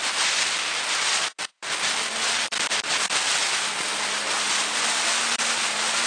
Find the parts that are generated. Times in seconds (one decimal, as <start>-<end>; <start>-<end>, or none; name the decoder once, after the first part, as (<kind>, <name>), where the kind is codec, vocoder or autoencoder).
1.5-3.0 (vocoder, BigVGAN v2)